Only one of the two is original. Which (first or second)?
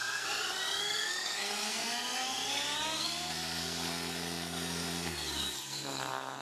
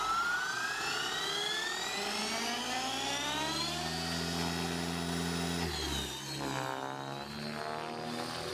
second